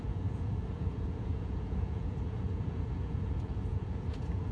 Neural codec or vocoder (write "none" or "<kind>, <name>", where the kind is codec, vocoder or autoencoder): vocoder, Vocos